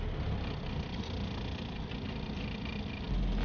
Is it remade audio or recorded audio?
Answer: recorded